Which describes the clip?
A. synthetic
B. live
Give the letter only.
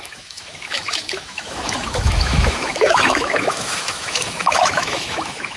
A